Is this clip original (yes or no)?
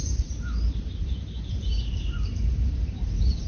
no